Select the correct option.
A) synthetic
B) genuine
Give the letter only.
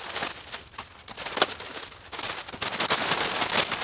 B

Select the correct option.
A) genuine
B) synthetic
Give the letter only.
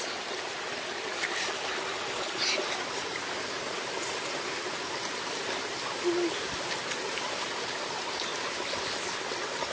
A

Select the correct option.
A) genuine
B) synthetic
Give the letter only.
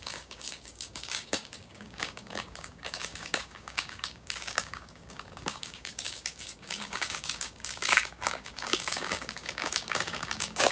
B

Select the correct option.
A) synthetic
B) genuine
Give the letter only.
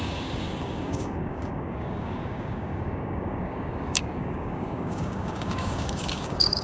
A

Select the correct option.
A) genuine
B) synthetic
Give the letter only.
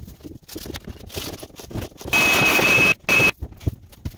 A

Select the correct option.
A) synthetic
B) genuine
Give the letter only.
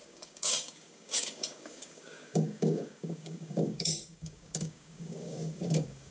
A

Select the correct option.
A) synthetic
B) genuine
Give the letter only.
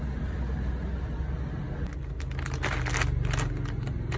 B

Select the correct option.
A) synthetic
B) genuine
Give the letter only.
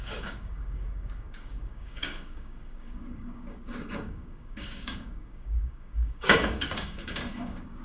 A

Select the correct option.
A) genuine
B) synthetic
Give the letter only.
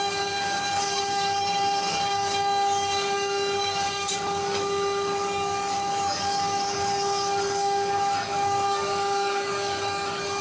B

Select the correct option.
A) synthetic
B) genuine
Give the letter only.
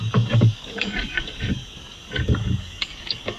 A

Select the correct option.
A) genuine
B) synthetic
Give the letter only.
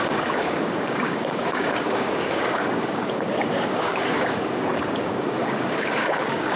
B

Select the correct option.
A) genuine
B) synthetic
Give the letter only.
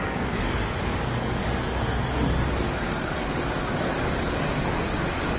B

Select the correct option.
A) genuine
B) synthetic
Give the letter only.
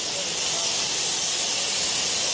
A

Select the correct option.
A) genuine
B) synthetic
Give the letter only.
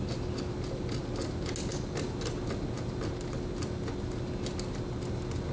A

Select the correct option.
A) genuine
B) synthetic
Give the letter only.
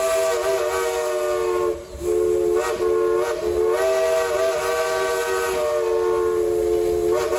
A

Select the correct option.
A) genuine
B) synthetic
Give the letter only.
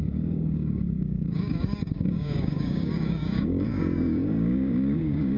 B